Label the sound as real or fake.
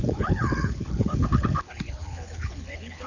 fake